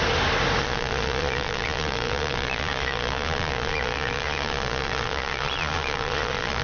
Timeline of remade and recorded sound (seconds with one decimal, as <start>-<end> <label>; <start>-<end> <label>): 0.0-0.6 recorded; 0.6-6.6 remade